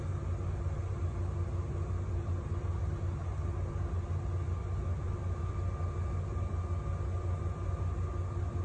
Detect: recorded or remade recorded